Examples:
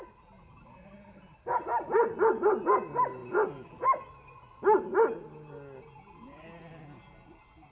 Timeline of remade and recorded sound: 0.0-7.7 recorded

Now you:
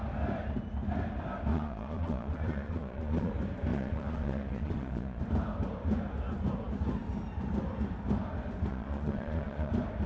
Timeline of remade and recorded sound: 0.0-1.5 recorded; 1.5-3.3 remade; 3.3-3.7 recorded; 3.7-5.2 remade; 5.2-8.7 recorded; 8.7-9.7 remade; 9.7-10.1 recorded

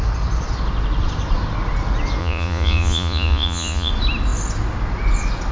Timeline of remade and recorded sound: 0.0-2.2 recorded; 2.2-3.9 remade; 3.9-5.5 recorded

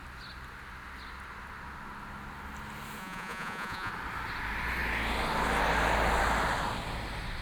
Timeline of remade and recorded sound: 0.0-3.0 recorded; 3.0-3.9 remade; 3.9-7.4 recorded

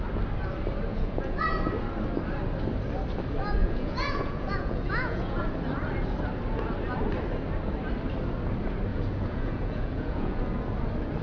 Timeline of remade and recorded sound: 0.0-0.9 recorded; 0.9-1.4 remade; 1.4-3.6 recorded; 3.6-5.4 remade; 5.4-8.9 recorded; 8.9-10.4 remade; 10.4-11.2 recorded

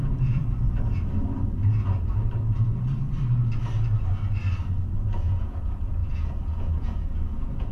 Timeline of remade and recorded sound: 0.0-0.4 remade; 0.4-5.0 recorded; 5.0-7.7 remade

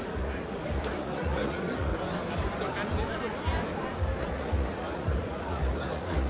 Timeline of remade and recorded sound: 0.0-1.9 remade; 1.9-4.2 recorded; 4.2-6.3 remade